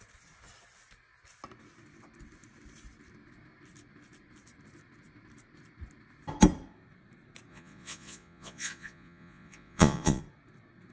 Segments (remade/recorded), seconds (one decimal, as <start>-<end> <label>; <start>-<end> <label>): 0.0-7.5 recorded; 7.5-10.2 remade; 10.2-10.9 recorded